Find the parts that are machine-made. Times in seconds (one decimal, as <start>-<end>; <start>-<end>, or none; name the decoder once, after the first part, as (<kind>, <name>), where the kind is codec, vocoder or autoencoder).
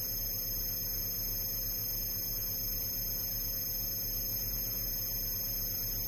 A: 4.3-4.9 (vocoder, Vocos)